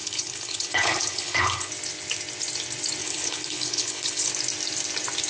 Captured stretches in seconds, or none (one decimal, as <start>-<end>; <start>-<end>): 1.7-3.0; 4.3-5.3